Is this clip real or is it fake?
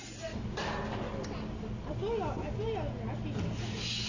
real